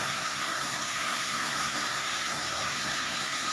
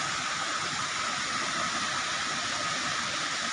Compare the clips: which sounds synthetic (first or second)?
first